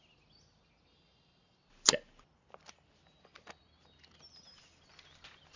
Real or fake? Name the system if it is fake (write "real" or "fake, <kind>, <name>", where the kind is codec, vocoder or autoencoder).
real